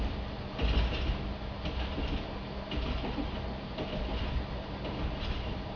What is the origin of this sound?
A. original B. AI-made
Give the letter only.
A